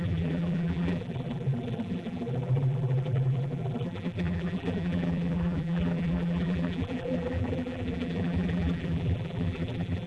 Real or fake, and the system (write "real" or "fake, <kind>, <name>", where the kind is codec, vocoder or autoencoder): fake, vocoder, BigVGAN v2